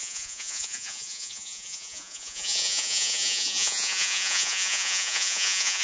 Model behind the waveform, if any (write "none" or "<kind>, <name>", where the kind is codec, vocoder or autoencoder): vocoder, Vocos